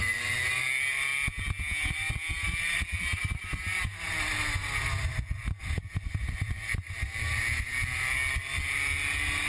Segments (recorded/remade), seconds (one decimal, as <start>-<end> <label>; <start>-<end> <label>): 0.0-9.5 recorded